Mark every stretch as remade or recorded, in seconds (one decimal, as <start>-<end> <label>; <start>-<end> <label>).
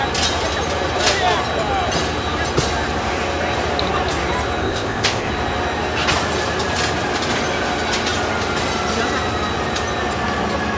0.0-4.6 recorded; 4.6-5.3 remade; 5.3-10.8 recorded